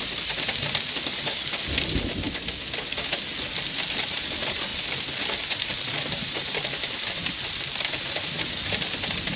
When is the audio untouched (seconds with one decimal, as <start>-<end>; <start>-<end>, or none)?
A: 1.3-4.0; 4.7-5.8

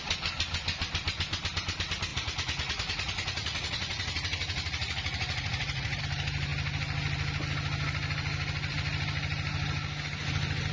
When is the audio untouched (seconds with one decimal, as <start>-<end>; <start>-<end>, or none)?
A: 0.0-2.1; 6.0-10.7

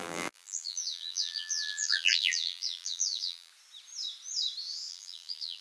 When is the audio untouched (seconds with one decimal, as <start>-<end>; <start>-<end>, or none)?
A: 3.5-4.9